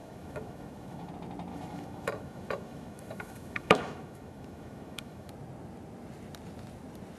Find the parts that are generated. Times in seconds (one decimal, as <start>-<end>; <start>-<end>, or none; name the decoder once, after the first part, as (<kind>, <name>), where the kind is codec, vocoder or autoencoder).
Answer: 0.0-1.1 (autoencoder, DAC-VAE); 1.5-5.3